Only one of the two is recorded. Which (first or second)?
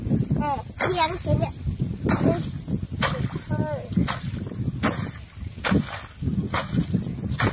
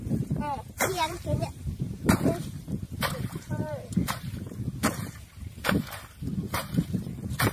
first